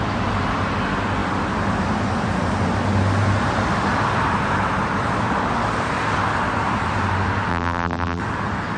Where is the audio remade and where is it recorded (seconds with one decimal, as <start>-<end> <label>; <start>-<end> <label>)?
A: 0.0-7.5 recorded; 7.5-8.2 remade; 8.2-8.8 recorded